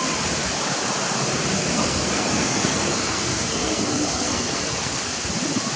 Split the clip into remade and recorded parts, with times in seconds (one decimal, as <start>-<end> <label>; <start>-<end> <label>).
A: 0.0-1.5 recorded; 1.5-5.0 remade; 5.0-5.8 recorded